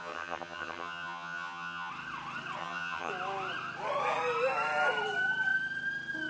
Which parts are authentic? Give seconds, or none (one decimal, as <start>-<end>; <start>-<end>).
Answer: 1.9-2.6; 3.1-6.3